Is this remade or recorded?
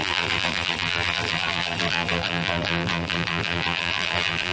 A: remade